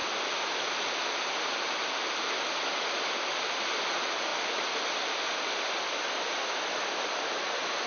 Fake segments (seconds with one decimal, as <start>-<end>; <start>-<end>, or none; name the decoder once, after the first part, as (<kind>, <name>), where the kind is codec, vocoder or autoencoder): none